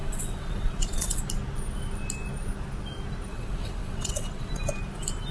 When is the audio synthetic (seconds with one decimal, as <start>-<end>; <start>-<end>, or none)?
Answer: 0.0-1.2; 3.3-4.5